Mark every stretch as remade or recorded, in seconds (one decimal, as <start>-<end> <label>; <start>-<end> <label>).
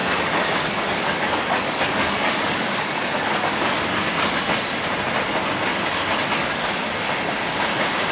0.0-4.1 remade; 4.1-5.7 recorded; 5.7-6.9 remade; 6.9-8.1 recorded